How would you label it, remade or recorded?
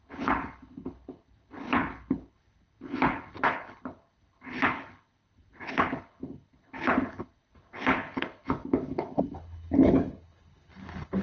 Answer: remade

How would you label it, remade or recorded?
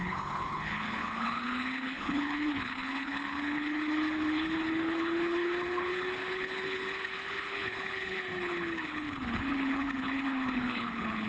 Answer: remade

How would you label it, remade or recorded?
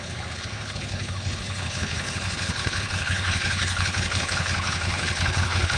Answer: remade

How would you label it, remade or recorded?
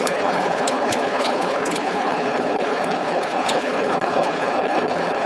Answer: remade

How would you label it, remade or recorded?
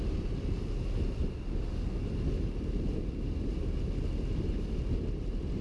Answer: recorded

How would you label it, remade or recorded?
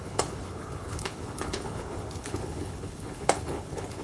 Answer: remade